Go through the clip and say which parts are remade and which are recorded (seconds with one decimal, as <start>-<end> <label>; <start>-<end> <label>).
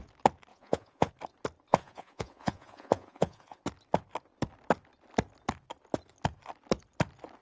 0.0-0.5 recorded; 0.5-1.1 remade; 1.1-1.7 recorded; 1.7-3.6 remade; 3.6-7.4 recorded